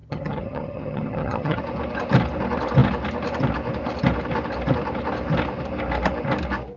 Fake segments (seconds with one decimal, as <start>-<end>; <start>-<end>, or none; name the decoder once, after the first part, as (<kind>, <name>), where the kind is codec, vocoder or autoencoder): 0.0-1.6 (vocoder, HiFi-GAN)